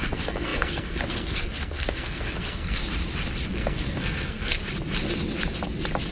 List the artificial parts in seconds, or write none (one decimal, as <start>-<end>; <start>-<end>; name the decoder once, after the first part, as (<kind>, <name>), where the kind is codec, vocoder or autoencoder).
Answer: 0.0-2.8 (codec, SNAC); 3.5-4.6